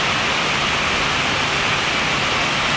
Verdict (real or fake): real